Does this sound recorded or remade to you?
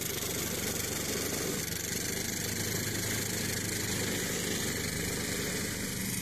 recorded